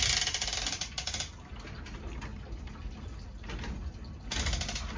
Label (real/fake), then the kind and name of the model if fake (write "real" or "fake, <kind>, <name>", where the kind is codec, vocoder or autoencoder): real